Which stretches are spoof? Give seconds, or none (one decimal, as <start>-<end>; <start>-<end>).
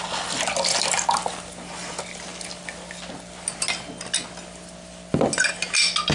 none